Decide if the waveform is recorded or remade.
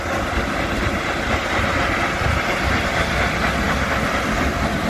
recorded